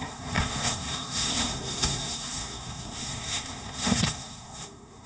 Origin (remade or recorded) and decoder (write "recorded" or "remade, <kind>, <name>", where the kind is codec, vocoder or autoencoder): remade, codec, SNAC